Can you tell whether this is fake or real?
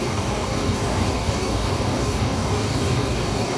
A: fake